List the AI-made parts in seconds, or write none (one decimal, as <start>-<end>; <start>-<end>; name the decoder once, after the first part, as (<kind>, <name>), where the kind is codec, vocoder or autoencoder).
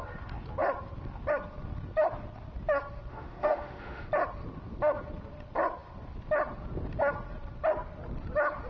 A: 3.1-4.1 (autoencoder, DAC-VAE)